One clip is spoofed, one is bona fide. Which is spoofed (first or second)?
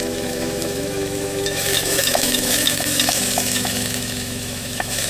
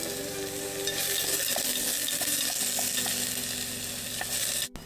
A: first